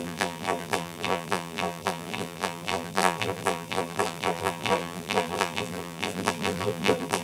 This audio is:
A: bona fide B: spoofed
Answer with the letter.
B